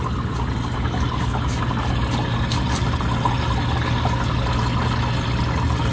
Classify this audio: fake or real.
real